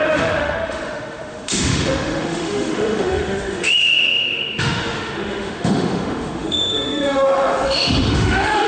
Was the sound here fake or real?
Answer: fake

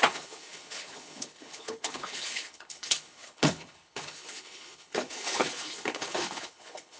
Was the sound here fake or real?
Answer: fake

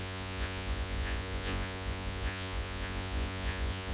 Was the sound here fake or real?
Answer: fake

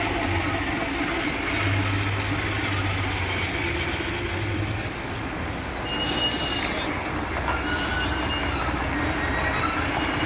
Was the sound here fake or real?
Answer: real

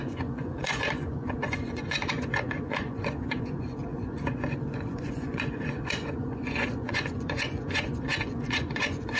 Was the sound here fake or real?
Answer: fake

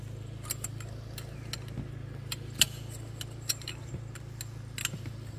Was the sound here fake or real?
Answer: real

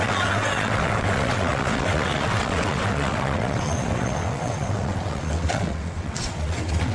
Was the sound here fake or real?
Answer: fake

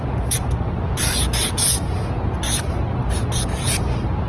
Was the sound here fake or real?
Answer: real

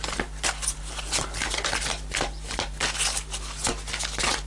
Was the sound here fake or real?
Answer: real